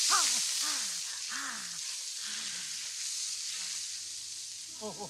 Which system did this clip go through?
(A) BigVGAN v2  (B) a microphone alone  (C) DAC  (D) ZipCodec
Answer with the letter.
B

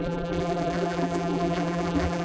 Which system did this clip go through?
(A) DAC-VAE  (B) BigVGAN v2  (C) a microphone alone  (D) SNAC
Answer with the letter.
B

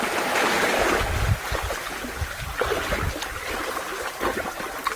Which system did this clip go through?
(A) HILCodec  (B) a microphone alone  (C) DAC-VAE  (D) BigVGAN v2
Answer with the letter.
B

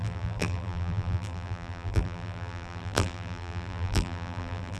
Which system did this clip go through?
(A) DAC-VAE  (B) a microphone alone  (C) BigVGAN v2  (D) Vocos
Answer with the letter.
C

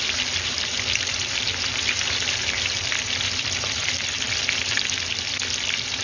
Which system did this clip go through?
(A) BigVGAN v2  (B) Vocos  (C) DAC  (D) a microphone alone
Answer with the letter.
A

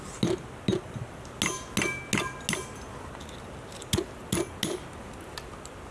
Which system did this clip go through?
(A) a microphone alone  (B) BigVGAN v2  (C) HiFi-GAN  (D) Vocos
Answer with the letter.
A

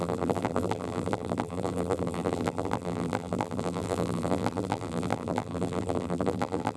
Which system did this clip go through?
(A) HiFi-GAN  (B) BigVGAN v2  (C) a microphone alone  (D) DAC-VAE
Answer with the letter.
B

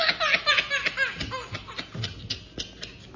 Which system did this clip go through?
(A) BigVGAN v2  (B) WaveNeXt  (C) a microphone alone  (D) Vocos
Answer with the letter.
C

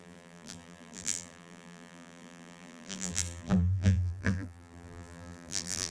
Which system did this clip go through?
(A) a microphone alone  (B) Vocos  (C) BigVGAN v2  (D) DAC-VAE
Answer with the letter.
C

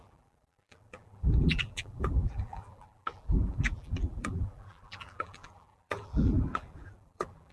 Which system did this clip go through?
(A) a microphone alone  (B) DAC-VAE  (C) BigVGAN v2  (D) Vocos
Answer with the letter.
C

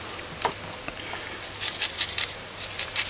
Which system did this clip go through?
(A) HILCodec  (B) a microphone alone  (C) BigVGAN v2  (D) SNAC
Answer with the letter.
C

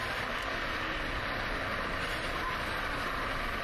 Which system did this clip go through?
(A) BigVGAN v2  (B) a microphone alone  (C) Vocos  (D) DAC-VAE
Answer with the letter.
B